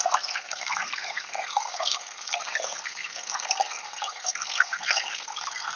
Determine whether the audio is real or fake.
fake